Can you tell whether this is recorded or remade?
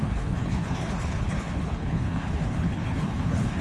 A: remade